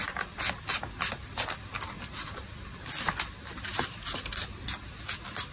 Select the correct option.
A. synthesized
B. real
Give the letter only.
B